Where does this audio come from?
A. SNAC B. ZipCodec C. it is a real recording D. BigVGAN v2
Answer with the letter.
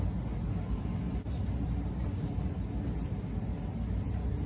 C